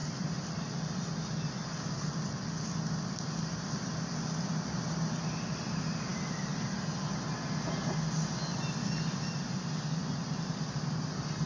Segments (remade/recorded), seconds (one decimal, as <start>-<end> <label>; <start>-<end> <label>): 0.0-3.1 recorded; 3.1-6.1 remade; 6.1-8.6 recorded; 8.6-11.5 remade